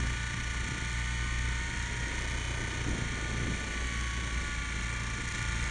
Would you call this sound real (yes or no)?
yes